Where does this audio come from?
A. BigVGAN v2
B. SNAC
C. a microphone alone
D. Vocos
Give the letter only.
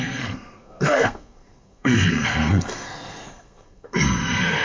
B